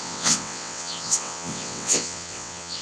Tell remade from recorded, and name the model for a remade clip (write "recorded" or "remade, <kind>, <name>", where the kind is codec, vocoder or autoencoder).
remade, vocoder, WaveNeXt